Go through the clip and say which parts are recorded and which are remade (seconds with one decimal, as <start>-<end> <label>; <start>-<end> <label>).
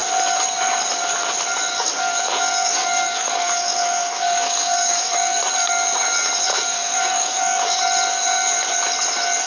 0.0-1.7 recorded; 1.7-5.4 remade; 5.4-6.5 recorded; 6.5-7.8 remade; 7.8-9.5 recorded